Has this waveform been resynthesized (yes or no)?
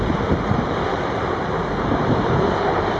yes